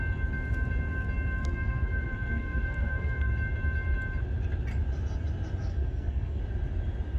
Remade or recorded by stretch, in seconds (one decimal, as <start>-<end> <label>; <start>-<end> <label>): 0.0-1.4 recorded; 1.4-3.3 remade; 3.3-5.7 recorded; 5.7-6.4 remade; 6.4-7.2 recorded